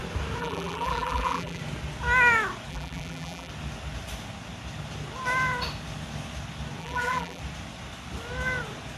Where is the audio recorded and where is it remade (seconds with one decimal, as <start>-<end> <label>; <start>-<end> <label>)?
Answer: 0.0-0.4 recorded; 0.4-1.6 remade; 1.6-2.7 recorded; 2.7-3.5 remade; 3.5-6.8 recorded; 6.8-7.4 remade; 7.4-9.0 recorded